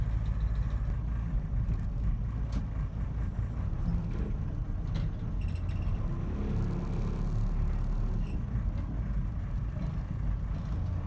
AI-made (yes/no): no